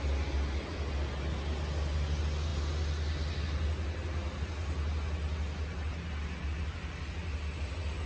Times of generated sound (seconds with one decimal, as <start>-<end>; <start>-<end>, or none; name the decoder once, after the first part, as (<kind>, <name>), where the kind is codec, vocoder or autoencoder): none